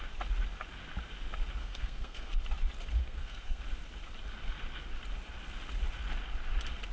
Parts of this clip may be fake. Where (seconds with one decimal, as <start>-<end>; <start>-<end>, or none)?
1.6-2.4; 3.0-3.6